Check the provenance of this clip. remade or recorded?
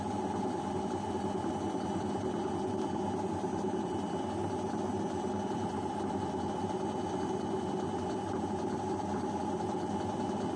recorded